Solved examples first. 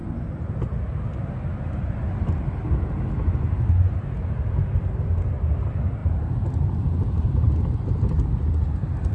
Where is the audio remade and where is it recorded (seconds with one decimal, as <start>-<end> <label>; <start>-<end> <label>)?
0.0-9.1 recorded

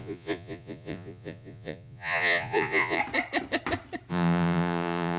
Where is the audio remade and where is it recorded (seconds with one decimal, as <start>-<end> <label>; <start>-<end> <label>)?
0.0-3.0 remade; 3.0-4.1 recorded; 4.1-5.2 remade

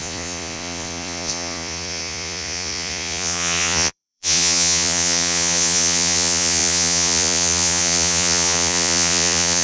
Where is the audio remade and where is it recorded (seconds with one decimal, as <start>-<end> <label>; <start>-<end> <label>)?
0.0-9.6 remade

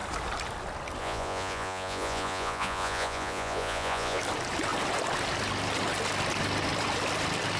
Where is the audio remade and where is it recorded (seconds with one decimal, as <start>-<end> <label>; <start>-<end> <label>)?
0.0-1.0 recorded; 1.0-4.2 remade; 4.2-7.6 recorded